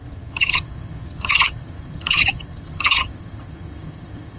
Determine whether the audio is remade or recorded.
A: remade